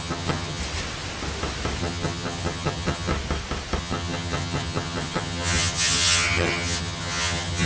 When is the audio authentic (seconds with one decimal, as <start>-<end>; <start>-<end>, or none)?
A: 0.6-1.8; 3.1-3.8

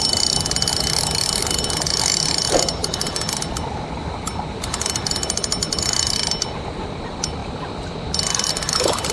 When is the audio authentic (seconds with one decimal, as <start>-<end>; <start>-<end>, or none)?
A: 0.0-9.1

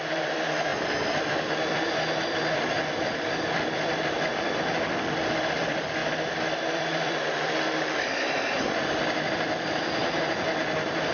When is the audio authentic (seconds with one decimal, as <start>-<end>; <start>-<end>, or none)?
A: 10.0-10.5

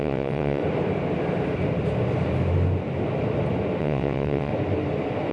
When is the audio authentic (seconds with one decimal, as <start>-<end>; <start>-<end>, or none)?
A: 0.6-3.8; 4.5-5.3

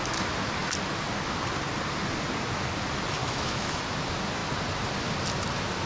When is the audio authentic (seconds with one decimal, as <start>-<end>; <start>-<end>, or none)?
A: 0.0-3.2; 3.8-5.9

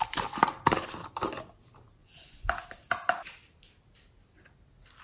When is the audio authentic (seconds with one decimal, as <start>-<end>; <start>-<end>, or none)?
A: 0.0-2.0; 2.6-5.0